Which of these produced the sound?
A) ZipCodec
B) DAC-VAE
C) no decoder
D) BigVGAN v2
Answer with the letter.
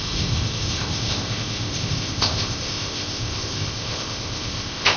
A